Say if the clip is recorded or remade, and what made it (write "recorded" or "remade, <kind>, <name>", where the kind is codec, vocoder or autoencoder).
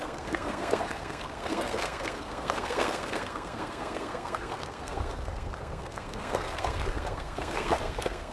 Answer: remade, codec, SNAC